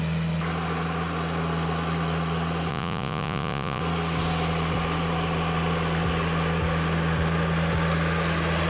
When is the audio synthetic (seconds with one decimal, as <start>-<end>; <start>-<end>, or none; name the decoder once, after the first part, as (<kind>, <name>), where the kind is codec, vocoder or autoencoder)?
2.7-3.8 (vocoder, Vocos)